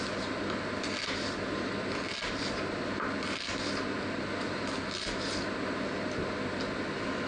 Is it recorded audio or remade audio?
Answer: recorded